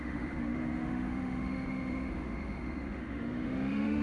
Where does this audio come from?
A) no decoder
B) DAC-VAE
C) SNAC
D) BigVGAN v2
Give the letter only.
B